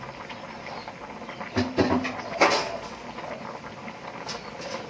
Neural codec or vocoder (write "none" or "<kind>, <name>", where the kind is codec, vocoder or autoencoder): none